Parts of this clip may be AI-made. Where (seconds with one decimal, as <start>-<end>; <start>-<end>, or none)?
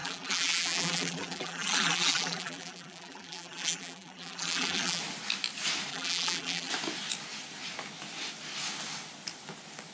0.0-5.0; 5.9-6.7